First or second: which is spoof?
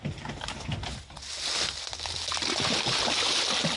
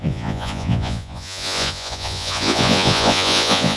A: second